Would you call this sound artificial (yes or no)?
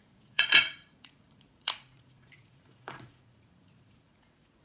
yes